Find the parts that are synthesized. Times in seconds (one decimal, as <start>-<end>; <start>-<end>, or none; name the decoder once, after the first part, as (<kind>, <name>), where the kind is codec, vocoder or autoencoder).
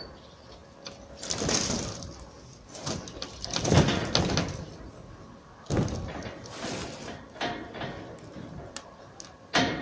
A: none